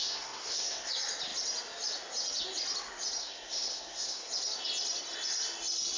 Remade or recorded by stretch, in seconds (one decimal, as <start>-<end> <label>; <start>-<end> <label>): 0.0-0.9 remade; 0.9-3.2 recorded; 3.2-4.3 remade; 4.3-6.0 recorded